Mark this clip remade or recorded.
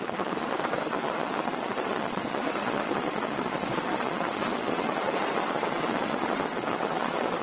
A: remade